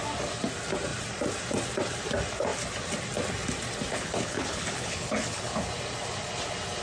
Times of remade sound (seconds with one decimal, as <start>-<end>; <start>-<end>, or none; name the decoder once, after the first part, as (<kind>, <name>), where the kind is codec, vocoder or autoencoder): 3.9-5.6 (codec, HILCodec)